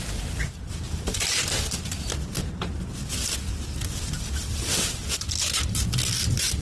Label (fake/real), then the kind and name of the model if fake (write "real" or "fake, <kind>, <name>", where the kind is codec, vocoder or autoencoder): real